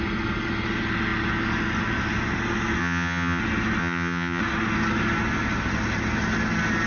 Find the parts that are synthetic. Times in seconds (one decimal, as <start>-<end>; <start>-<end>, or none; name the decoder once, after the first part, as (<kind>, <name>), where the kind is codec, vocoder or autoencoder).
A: 2.8-3.4 (vocoder, HiFi-GAN); 3.8-4.4